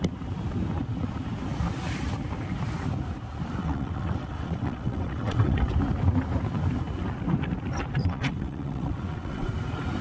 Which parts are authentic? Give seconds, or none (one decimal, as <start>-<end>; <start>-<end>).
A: 0.0-3.6; 5.7-8.0; 9.5-10.0

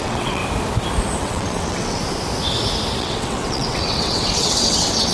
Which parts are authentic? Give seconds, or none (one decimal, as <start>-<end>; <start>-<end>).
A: 0.4-1.2; 2.0-3.0

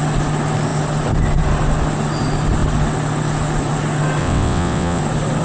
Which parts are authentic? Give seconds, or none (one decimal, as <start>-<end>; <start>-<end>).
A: 0.0-4.2; 5.0-5.4

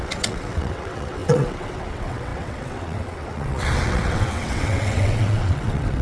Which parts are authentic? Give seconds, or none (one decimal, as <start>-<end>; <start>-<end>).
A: none

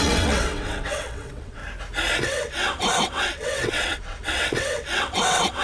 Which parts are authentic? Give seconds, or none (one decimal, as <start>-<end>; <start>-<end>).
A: 1.6-2.2

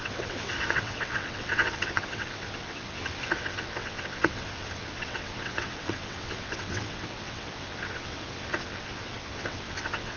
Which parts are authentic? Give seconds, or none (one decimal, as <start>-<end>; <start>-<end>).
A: none

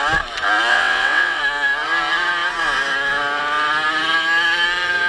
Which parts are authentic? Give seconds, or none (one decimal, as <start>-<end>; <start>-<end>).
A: 0.0-0.7; 1.4-5.1